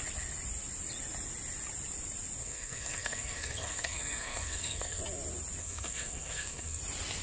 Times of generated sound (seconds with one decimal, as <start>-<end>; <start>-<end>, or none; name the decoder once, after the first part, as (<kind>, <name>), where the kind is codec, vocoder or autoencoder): 2.4-5.0 (codec, SNAC); 5.6-6.8